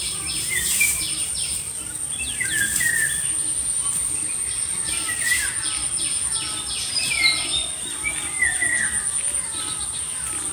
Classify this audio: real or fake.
real